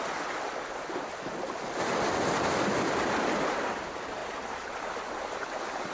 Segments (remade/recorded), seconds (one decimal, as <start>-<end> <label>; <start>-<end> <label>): 0.0-5.9 recorded